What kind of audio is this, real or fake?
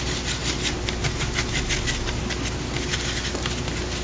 real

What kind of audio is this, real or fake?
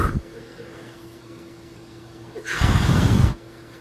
fake